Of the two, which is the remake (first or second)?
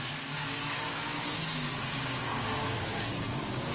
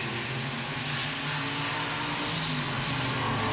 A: first